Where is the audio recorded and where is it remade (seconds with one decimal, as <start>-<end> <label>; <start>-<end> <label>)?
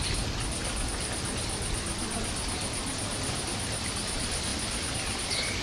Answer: 0.0-5.6 recorded